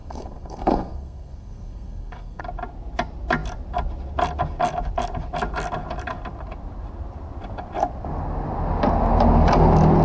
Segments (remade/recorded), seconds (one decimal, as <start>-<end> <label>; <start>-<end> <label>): 0.0-2.4 remade; 2.4-10.0 recorded